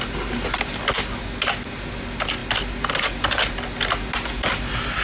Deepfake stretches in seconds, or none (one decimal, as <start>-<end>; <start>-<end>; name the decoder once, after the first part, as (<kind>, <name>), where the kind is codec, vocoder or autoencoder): none

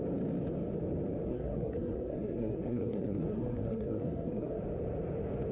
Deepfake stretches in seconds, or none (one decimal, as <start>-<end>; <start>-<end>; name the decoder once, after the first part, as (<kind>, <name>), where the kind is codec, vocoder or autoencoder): 1.3-4.6 (codec, SNAC)

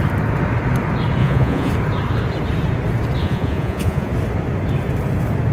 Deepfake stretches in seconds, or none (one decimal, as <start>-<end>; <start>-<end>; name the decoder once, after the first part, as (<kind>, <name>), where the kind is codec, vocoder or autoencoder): 1.2-1.7 (vocoder, Vocos); 3.2-4.1